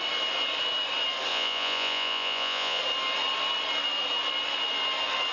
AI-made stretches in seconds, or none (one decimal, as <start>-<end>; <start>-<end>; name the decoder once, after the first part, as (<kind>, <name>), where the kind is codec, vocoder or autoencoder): 1.3-2.8 (vocoder, Vocos)